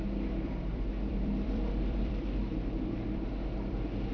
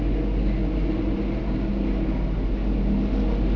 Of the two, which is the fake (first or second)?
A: first